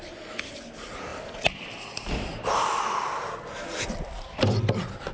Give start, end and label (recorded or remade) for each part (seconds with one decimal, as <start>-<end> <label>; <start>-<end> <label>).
0.0-5.1 recorded